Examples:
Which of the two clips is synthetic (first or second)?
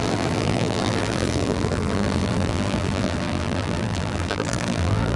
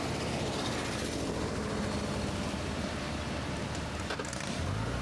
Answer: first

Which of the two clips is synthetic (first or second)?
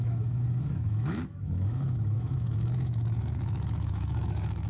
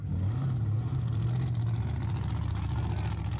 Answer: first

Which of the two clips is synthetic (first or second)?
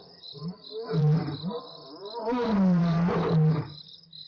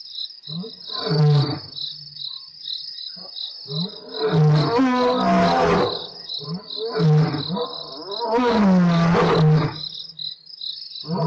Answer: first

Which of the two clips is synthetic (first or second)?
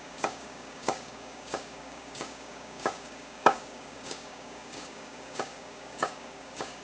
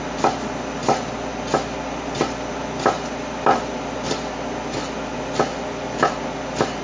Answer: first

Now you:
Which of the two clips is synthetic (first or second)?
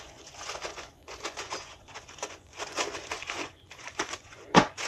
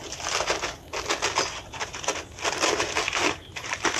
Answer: first